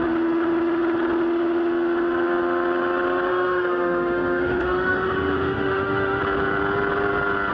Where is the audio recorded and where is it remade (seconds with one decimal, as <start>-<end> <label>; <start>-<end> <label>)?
0.0-3.3 recorded; 3.3-6.2 remade; 6.2-7.5 recorded